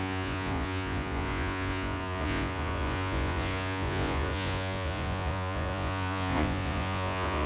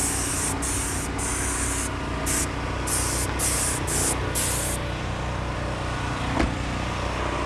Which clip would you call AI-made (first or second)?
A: first